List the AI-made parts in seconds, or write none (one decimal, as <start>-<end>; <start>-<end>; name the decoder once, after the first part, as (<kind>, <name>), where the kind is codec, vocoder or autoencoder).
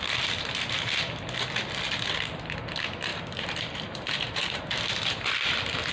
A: 3.1-4.6 (vocoder, BigVGAN v2)